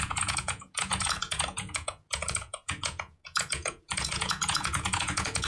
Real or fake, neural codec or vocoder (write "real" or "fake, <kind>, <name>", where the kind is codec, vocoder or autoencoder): fake, vocoder, Vocos